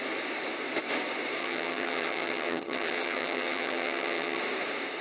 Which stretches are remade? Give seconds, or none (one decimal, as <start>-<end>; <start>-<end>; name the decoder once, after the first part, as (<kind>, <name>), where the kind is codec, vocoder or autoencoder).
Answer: 1.4-4.4 (vocoder, HiFi-GAN)